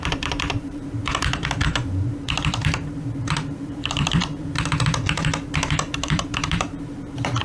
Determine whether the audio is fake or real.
fake